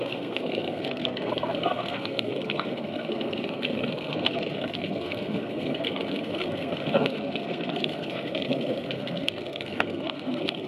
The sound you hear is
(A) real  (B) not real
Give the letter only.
B